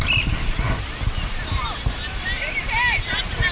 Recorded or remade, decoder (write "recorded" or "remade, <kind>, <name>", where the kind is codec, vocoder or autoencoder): recorded